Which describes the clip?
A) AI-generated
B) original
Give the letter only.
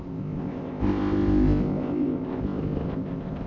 A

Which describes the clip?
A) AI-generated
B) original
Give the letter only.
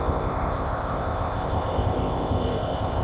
A